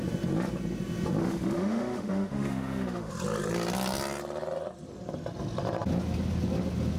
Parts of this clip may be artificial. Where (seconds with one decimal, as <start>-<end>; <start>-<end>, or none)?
1.2-3.1